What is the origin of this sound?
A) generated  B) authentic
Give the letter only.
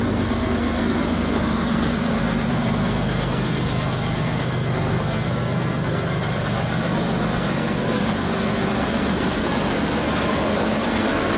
A